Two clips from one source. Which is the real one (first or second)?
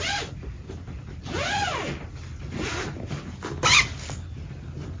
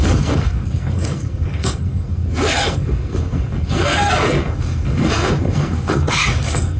first